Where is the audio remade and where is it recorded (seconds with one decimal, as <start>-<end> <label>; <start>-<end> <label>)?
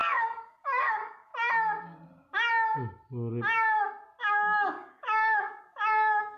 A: 0.0-1.3 remade; 1.3-4.2 recorded; 4.2-6.4 remade